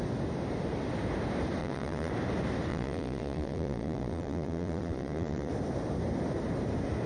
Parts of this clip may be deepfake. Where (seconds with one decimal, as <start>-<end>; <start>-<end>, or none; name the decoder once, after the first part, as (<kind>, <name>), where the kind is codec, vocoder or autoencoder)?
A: 1.6-2.1 (vocoder, Vocos); 2.7-5.5